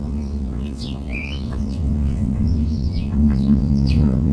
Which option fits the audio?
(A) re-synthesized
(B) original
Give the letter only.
A